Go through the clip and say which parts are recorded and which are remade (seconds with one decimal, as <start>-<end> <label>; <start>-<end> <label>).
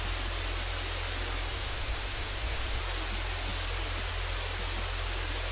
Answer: 0.0-1.5 recorded; 1.5-2.8 remade; 2.8-5.5 recorded